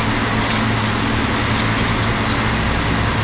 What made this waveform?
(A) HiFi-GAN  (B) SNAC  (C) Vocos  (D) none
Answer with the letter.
D